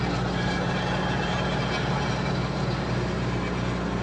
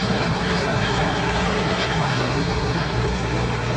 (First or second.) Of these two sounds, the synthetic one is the second